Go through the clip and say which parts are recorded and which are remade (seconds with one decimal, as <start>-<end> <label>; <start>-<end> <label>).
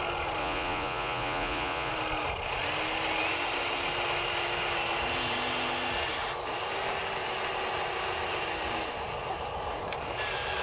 0.0-0.4 recorded; 0.4-1.9 remade; 1.9-10.6 recorded